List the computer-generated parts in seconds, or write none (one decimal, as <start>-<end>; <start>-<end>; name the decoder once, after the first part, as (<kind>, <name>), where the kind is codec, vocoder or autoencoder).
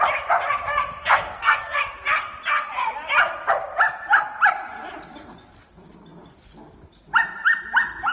1.0-1.8 (codec, SNAC)